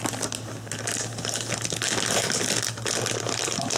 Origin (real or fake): real